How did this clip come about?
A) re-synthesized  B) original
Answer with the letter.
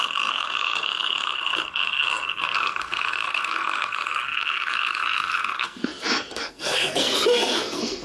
A